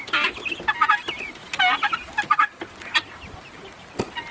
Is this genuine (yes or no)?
yes